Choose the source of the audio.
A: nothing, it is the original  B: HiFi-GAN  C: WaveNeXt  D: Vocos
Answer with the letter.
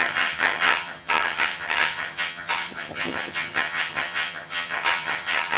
B